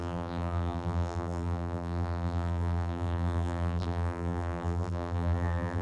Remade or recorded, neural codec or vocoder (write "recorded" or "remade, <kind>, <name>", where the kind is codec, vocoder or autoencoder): remade, vocoder, BigVGAN v2